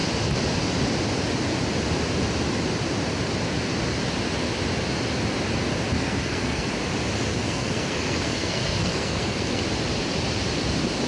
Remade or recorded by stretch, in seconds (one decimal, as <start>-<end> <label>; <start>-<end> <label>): 0.0-6.0 recorded; 6.0-6.7 remade; 6.7-7.3 recorded; 7.3-9.6 remade; 9.6-11.1 recorded